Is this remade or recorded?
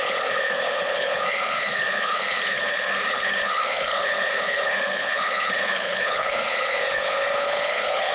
remade